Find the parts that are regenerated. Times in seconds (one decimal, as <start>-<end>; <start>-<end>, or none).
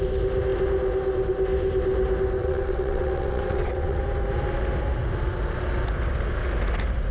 2.4-4.0